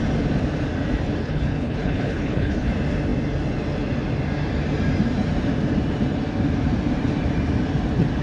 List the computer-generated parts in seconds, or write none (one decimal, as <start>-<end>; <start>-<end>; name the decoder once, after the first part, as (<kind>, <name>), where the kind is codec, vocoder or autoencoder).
1.2-2.7 (codec, HILCodec)